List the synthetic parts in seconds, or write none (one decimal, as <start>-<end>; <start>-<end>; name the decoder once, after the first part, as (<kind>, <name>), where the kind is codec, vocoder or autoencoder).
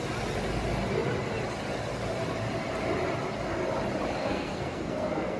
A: 4.2-5.4 (codec, SNAC)